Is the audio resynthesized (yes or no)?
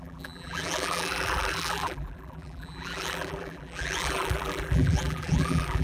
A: yes